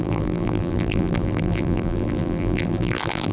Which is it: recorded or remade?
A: remade